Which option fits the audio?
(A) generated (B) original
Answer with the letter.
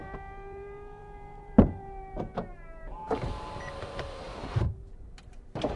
A